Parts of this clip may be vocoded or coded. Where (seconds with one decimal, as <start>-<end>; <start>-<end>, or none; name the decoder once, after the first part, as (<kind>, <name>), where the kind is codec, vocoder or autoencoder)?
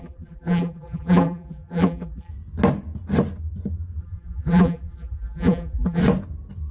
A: 0.0-2.3 (vocoder, BigVGAN v2); 4.0-6.0